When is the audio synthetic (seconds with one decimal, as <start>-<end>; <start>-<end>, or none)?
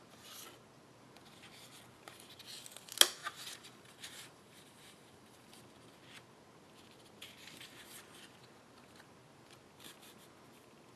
3.2-5.6